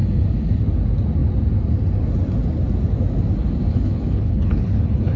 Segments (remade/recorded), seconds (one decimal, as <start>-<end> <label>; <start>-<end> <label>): 0.0-3.7 recorded; 3.7-5.2 remade